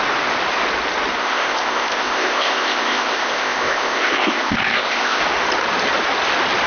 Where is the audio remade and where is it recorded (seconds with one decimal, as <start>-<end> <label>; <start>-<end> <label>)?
0.0-1.2 recorded; 1.2-5.2 remade; 5.2-6.7 recorded